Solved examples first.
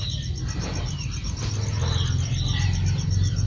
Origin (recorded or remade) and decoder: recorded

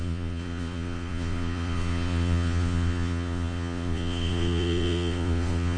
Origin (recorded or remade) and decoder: remade, vocoder, Vocos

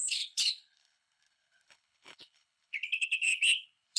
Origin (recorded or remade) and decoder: remade, codec, HILCodec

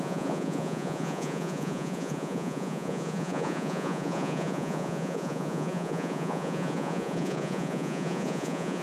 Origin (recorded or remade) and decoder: remade, vocoder, Vocos